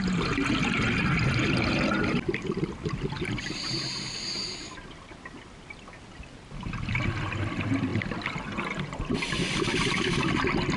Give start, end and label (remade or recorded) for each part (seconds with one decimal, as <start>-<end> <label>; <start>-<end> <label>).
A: 0.0-10.8 recorded